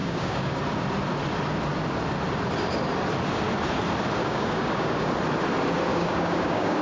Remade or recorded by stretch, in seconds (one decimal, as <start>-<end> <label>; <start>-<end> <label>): 0.0-0.6 remade; 0.6-4.2 recorded; 4.2-5.1 remade; 5.1-5.9 recorded; 5.9-6.8 remade